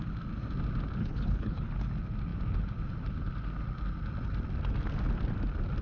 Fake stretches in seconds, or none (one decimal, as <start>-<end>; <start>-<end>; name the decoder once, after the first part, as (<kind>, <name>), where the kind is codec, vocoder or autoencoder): 1.0-1.7 (codec, HILCodec)